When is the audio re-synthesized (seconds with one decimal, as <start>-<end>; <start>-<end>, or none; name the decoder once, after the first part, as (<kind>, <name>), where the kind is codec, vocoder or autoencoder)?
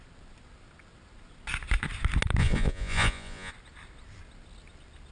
2.4-3.5 (vocoder, Vocos)